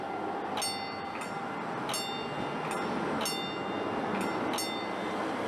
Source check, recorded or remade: recorded